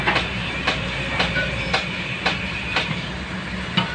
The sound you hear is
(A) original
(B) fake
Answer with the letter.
B